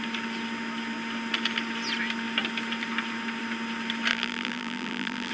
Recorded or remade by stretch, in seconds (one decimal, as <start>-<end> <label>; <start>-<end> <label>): 0.0-4.1 recorded; 4.1-5.3 remade